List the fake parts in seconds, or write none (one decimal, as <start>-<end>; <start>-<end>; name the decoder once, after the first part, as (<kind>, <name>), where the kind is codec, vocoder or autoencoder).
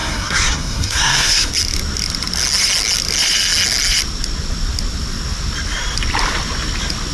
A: 0.0-1.5 (codec, SNAC)